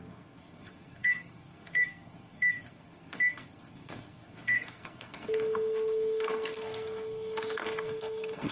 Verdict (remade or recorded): remade